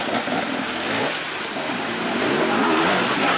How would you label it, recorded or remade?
recorded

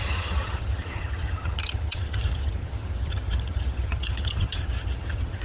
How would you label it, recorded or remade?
remade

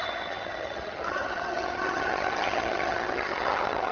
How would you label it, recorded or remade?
remade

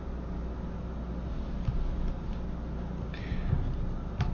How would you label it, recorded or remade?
recorded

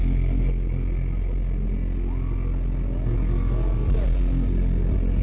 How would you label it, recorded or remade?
recorded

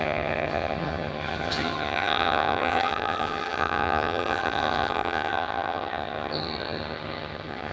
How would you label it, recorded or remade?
remade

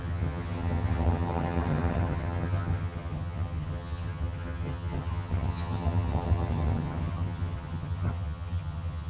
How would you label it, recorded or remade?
remade